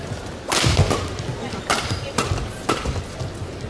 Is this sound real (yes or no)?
yes